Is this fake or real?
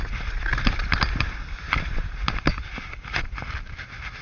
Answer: real